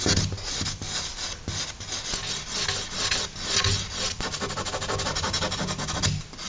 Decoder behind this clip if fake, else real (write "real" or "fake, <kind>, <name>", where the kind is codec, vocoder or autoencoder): real